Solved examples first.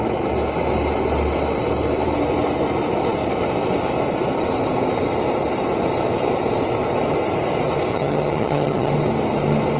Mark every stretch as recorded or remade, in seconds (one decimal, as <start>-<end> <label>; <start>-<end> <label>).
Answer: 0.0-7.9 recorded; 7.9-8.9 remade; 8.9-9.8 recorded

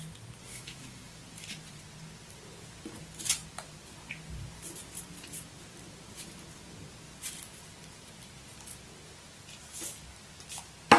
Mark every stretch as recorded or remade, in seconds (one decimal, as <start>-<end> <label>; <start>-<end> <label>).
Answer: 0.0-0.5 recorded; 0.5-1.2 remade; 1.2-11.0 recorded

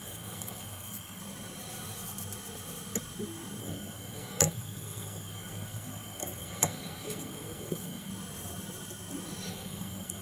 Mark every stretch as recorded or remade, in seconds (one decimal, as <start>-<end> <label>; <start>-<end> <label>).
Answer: 0.0-1.2 remade; 1.2-3.6 recorded; 3.6-8.1 remade; 8.1-9.5 recorded; 9.5-10.2 remade

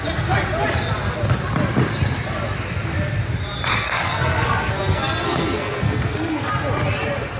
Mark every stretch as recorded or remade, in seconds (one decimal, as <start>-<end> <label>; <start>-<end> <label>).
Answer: 0.0-3.7 recorded; 3.7-6.5 remade; 6.5-7.4 recorded

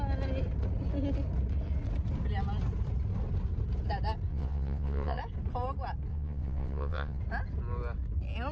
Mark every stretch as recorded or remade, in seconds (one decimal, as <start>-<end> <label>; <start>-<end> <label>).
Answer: 0.0-4.3 recorded; 4.3-5.2 remade; 5.2-6.1 recorded; 6.1-7.2 remade; 7.2-8.5 recorded

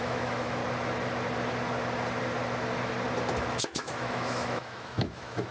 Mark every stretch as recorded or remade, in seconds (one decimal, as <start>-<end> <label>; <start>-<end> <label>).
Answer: 0.0-0.6 remade; 0.6-3.5 recorded; 3.5-5.5 remade

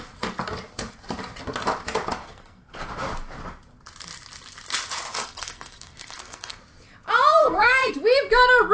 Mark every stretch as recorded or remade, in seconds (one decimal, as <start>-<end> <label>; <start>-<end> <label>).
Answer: 0.0-2.2 recorded; 2.2-2.9 remade; 2.9-5.1 recorded; 5.1-6.6 remade; 6.6-7.4 recorded; 7.4-7.9 remade; 7.9-8.7 recorded